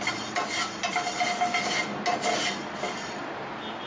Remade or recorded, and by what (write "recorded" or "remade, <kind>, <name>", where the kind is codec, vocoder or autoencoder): recorded